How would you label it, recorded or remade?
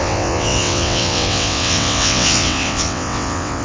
remade